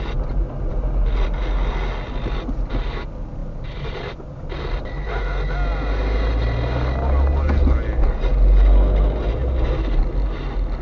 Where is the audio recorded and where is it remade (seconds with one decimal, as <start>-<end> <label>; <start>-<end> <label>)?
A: 0.0-10.8 recorded